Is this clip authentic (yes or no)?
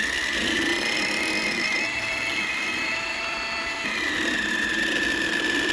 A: no